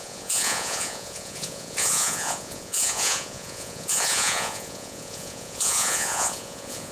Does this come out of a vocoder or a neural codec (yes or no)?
yes